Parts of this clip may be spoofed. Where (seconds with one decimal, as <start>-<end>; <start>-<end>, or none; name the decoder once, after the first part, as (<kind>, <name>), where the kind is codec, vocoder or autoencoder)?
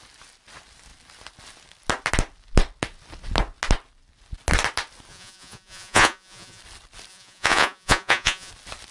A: 5.1-6.6 (vocoder, Vocos); 7.1-8.5